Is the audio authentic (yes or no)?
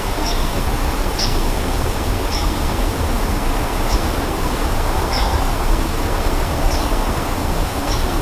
no